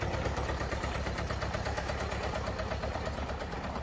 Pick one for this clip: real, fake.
fake